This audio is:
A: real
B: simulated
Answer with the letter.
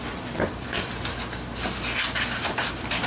A